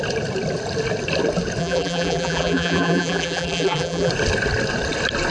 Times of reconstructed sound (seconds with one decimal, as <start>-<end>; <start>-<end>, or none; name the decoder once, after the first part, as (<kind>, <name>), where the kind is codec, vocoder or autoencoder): 1.6-4.1 (vocoder, BigVGAN v2)